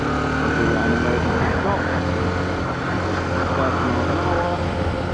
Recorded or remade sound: recorded